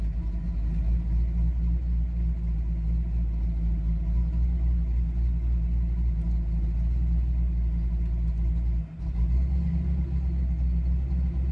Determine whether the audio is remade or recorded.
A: recorded